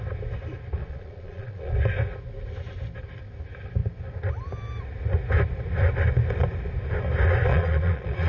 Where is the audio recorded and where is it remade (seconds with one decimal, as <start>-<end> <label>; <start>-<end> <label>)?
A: 0.0-0.8 recorded; 0.8-1.7 remade; 1.7-7.5 recorded; 7.5-8.3 remade